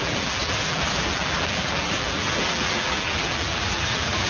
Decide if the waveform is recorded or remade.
remade